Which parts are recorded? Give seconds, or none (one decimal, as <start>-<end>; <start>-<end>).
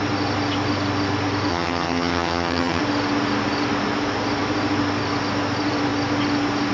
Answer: 0.0-1.5; 2.8-6.7